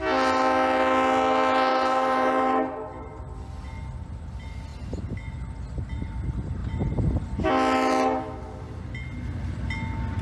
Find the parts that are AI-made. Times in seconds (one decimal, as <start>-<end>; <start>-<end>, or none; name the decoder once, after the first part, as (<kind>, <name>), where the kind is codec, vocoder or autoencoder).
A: 1.7-3.2 (vocoder, BigVGAN v2)